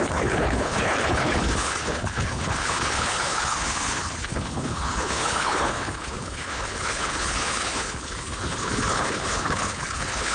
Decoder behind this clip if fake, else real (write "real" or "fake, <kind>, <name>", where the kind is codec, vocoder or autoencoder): fake, codec, HILCodec